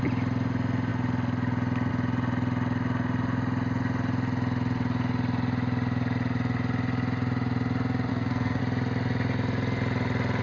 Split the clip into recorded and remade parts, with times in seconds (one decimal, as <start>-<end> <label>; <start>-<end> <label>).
0.0-8.1 recorded; 8.1-8.6 remade; 8.6-10.4 recorded